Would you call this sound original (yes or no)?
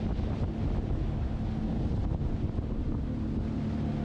yes